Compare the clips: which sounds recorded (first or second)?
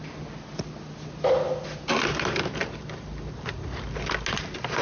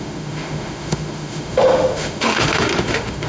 first